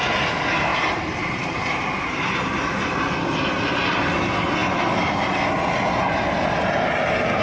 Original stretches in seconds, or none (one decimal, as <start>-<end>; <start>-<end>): 0.0-0.7; 3.2-7.4